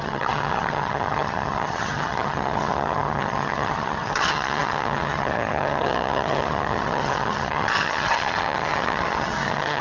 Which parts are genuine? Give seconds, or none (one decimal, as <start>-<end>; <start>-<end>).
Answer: none